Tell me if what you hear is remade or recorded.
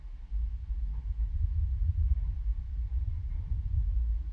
recorded